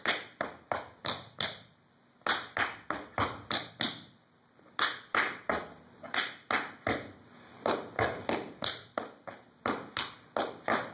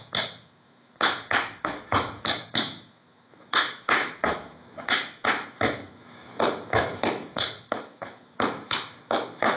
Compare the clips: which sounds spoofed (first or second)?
second